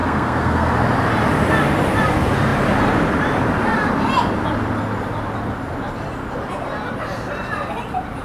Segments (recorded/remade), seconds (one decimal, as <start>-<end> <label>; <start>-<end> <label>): 0.0-0.7 remade; 0.7-8.2 recorded